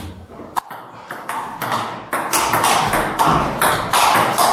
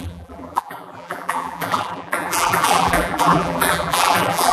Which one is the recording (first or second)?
first